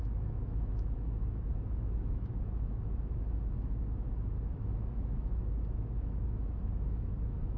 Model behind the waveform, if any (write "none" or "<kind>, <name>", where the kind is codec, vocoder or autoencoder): autoencoder, DAC-VAE